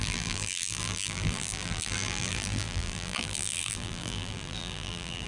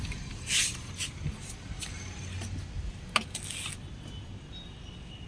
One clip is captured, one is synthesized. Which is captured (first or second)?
second